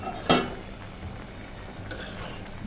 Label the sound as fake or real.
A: real